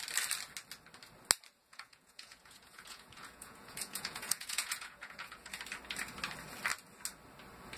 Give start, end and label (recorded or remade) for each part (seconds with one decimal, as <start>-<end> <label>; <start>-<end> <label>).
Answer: 0.0-1.6 recorded; 1.6-5.5 remade; 5.5-7.8 recorded